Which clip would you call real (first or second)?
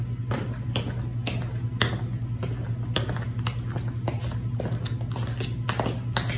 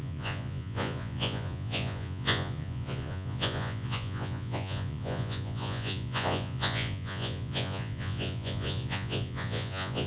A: first